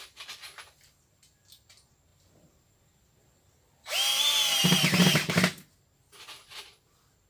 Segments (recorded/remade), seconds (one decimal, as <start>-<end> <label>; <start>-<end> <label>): 0.0-7.3 recorded